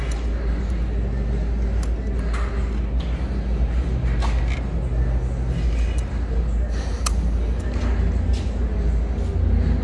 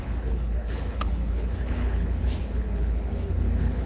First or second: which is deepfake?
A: second